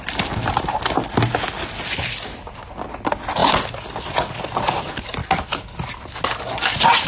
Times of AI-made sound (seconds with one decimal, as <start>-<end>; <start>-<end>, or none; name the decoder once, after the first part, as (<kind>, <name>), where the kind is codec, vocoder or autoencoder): none